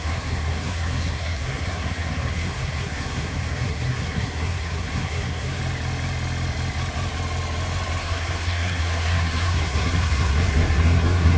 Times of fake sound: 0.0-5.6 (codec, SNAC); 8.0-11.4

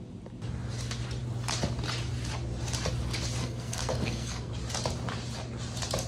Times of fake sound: 3.4-4.5 (codec, SNAC)

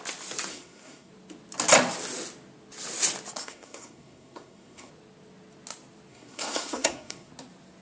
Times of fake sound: 0.5-1.1 (codec, SNAC); 3.4-4.9; 6.1-7.3

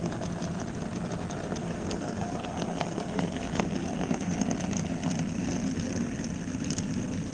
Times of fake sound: 1.6-4.4 (codec, SNAC)

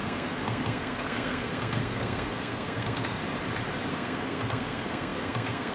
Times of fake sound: 0.0-3.2 (codec, SNAC); 3.9-5.7

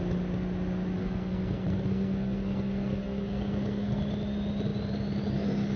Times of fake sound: 1.0-4.0 (codec, SNAC)